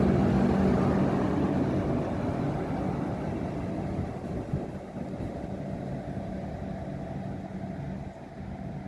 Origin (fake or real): real